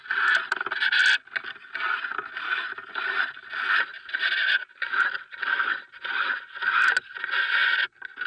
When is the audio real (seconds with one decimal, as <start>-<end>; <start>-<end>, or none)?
0.0-3.9; 6.3-8.3